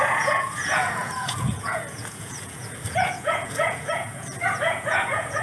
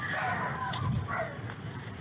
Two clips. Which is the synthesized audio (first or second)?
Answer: first